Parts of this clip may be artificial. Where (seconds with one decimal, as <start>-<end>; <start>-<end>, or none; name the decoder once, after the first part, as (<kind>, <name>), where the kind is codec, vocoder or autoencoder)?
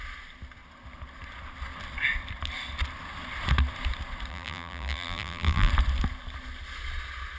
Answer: 4.3-5.7 (vocoder, BigVGAN v2)